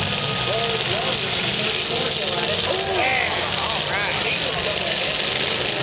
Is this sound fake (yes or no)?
no